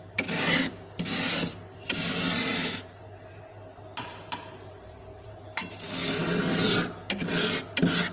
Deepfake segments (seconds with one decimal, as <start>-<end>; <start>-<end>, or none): 2.5-3.0; 4.1-5.7